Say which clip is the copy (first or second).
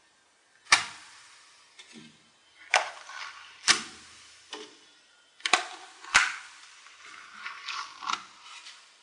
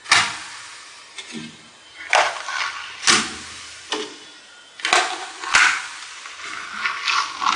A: first